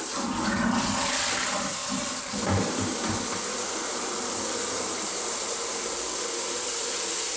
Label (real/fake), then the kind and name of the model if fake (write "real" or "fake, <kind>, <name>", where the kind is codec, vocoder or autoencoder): real